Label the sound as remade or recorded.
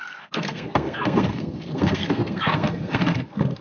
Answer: remade